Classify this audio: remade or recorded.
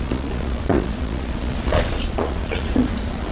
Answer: remade